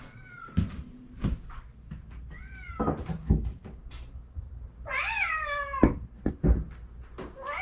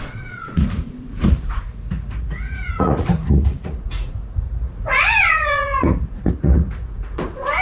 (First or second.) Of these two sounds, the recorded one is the first